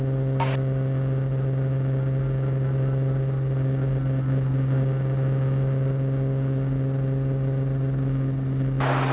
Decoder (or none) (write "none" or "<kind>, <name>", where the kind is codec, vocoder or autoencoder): none